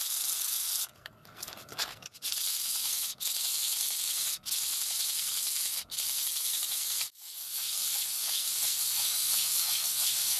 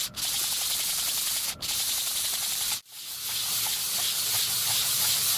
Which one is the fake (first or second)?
first